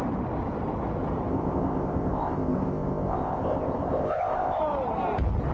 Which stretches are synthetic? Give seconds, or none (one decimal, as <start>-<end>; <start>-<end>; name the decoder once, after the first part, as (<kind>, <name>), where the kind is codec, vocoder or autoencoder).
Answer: 1.3-4.6 (codec, ZipCodec)